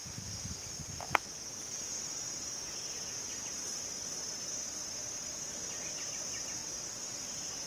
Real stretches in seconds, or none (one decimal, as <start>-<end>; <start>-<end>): 0.0-7.7